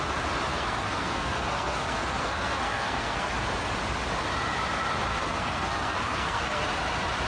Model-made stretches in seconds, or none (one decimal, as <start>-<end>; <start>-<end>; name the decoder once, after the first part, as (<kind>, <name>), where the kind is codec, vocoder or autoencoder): 0.5-3.3 (codec, SNAC); 5.1-6.6